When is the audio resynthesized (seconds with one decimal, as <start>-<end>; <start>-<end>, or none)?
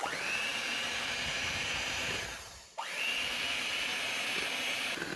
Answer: 0.0-3.9; 4.8-5.2